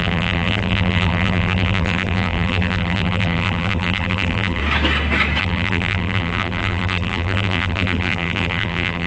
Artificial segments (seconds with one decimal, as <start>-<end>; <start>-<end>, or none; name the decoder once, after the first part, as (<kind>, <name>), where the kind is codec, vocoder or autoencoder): 0.0-4.6 (vocoder, BigVGAN v2); 5.4-9.1